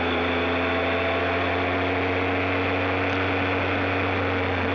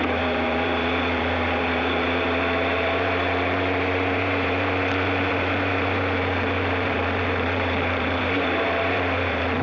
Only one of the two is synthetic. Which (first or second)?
second